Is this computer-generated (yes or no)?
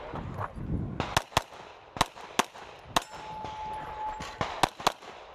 no